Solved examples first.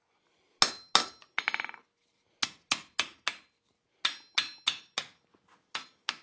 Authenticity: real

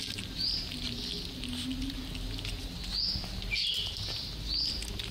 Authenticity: real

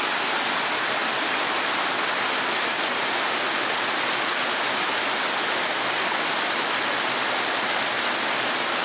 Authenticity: real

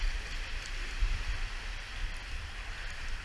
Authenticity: real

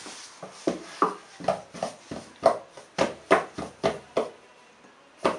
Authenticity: real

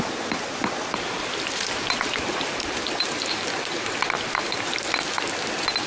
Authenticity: real